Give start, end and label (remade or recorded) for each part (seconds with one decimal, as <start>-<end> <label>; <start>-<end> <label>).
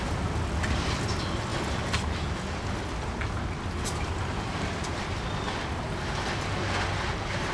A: 0.0-7.5 recorded